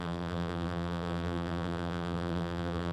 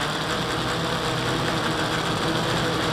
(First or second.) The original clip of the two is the second